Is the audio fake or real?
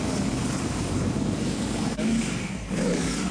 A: fake